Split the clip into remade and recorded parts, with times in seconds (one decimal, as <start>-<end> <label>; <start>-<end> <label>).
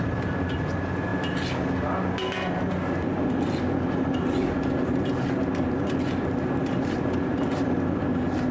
0.0-8.5 recorded